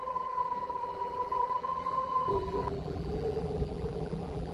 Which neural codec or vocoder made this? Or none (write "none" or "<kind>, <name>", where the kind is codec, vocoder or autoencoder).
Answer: vocoder, BigVGAN v2